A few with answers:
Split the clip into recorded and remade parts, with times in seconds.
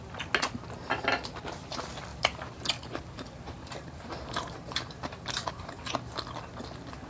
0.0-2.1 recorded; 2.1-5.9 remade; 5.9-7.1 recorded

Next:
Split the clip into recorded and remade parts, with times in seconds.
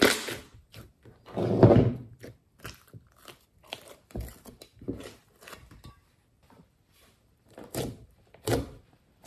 0.0-0.9 remade; 0.9-3.3 recorded; 3.3-4.7 remade; 4.7-6.9 recorded; 6.9-9.3 remade